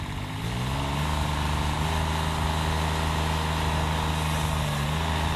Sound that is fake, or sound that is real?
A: real